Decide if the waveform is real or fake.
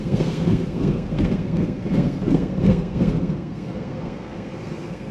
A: fake